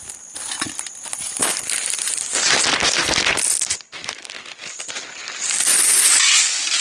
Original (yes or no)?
yes